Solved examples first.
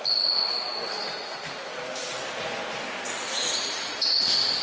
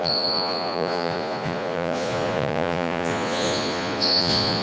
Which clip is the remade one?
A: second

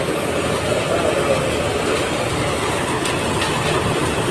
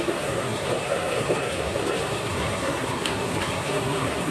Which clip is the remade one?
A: second